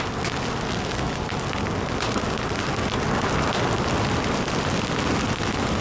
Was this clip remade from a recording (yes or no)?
no